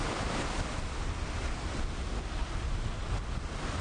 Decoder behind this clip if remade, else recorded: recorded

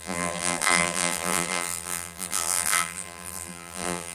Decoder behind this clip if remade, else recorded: remade, vocoder, BigVGAN v2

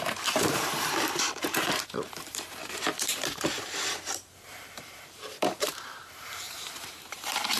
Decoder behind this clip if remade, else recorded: remade, vocoder, BigVGAN v2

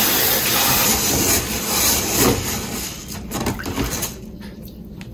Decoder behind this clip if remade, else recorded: recorded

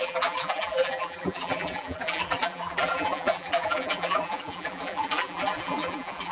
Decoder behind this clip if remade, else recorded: remade, vocoder, BigVGAN v2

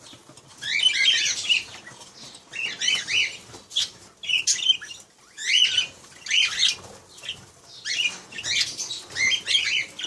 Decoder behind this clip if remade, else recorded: recorded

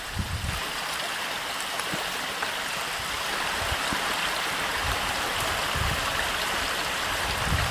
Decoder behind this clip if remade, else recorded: recorded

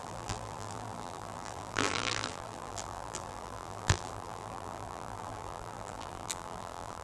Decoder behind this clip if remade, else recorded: remade, vocoder, BigVGAN v2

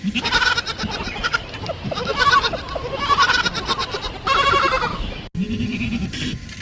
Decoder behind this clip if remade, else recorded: recorded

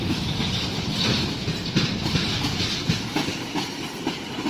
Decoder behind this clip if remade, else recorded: remade, vocoder, BigVGAN v2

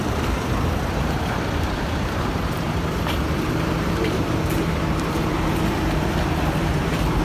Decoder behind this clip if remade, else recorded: remade, vocoder, BigVGAN v2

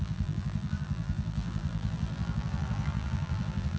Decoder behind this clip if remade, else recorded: remade, vocoder, BigVGAN v2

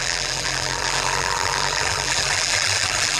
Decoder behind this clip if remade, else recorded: remade, vocoder, BigVGAN v2